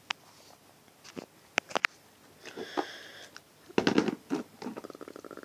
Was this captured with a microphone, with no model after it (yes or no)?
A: yes